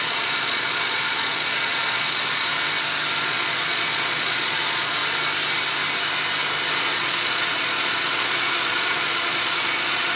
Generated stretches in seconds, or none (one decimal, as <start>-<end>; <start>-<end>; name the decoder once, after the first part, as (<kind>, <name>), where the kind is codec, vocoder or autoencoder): 0.0-2.5 (vocoder, Vocos); 3.2-5.0; 6.8-10.2